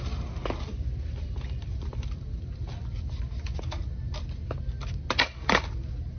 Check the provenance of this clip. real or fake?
real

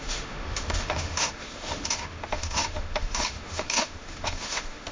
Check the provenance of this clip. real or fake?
fake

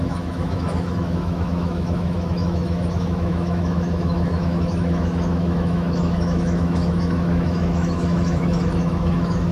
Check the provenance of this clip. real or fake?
fake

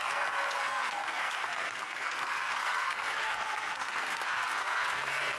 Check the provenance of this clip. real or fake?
fake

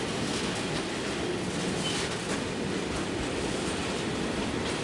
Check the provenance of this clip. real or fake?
real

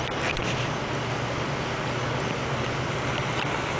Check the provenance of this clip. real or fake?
real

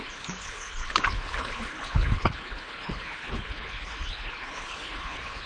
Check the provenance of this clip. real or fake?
fake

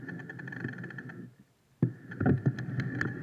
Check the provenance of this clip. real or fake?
real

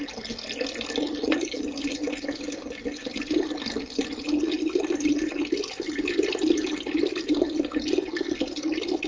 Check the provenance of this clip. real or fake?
real